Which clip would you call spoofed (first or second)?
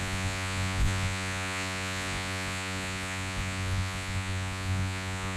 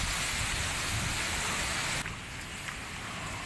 first